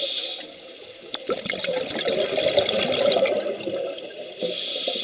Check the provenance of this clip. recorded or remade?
recorded